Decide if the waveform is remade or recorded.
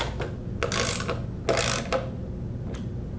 recorded